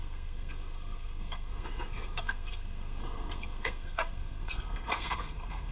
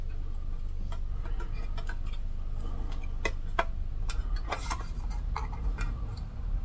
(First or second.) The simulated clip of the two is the first